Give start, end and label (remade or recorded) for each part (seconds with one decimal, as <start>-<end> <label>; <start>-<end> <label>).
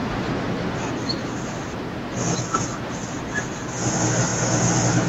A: 0.0-5.1 recorded